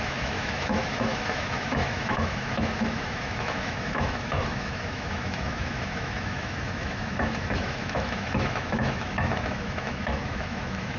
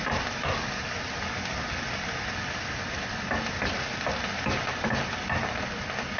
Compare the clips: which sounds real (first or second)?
second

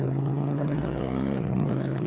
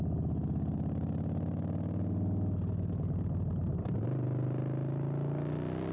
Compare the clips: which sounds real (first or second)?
second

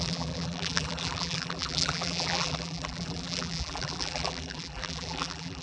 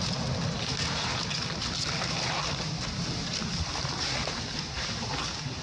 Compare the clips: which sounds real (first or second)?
second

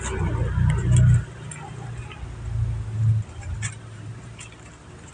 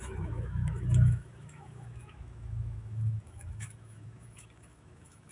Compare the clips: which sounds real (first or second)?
first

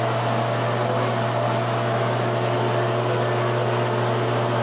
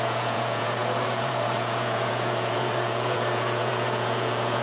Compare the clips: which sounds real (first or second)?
first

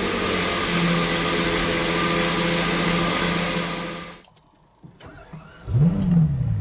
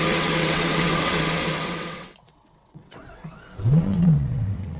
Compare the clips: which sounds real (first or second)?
first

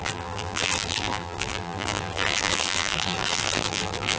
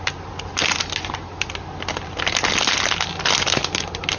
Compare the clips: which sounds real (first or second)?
second